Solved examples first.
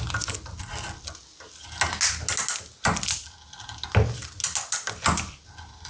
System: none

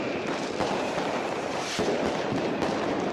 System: vocoder, BigVGAN v2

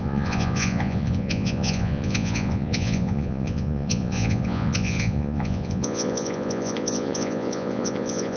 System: vocoder, Vocos